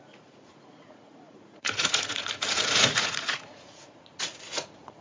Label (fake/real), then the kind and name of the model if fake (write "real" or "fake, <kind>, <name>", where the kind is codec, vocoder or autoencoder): fake, vocoder, Vocos